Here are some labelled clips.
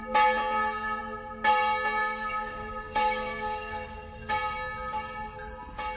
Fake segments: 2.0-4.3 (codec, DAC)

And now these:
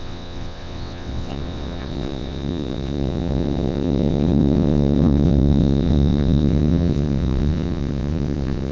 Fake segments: 0.0-8.7 (vocoder, WaveNeXt)